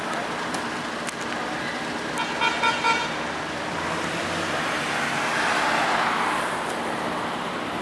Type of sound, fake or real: real